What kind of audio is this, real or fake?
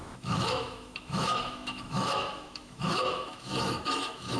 fake